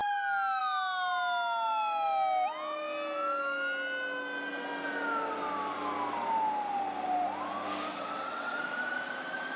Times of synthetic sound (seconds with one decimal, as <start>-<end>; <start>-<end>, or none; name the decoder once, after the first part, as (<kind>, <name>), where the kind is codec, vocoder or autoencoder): 7.9-8.6 (vocoder, WaveNeXt)